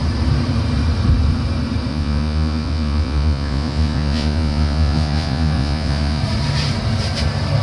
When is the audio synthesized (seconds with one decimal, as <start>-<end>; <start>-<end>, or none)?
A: 1.9-6.2